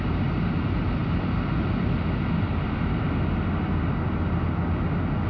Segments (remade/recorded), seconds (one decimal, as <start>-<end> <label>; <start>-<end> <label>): 0.0-5.3 recorded